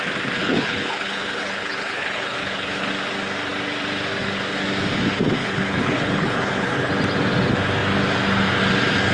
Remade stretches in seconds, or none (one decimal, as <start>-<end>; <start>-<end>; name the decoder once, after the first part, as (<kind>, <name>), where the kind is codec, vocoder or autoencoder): 0.4-2.9 (codec, HILCodec); 5.4-6.9